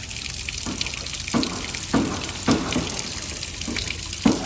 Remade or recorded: recorded